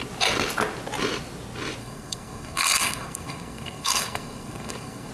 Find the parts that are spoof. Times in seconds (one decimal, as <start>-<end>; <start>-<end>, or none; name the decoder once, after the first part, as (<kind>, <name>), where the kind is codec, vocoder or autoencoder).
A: 1.8-5.1 (codec, SNAC)